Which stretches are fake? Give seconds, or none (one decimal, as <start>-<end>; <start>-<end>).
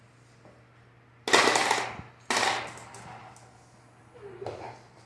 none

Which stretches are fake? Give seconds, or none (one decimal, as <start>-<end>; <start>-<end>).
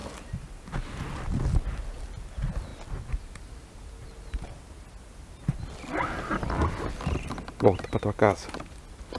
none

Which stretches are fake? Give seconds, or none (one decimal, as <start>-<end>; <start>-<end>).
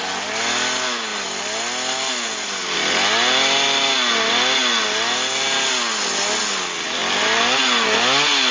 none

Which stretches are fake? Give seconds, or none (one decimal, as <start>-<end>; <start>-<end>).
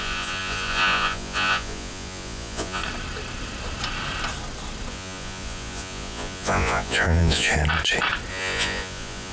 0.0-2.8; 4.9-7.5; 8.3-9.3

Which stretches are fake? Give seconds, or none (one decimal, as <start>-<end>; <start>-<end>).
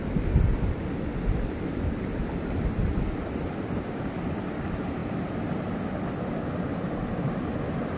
none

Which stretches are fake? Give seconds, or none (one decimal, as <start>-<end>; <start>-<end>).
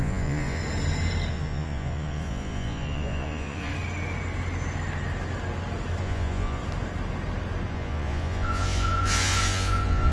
0.0-0.6; 1.3-3.7; 6.0-6.6; 7.7-10.1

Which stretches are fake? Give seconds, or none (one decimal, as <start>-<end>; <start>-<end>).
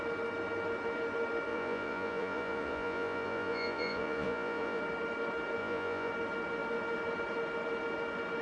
1.5-4.8; 5.6-6.1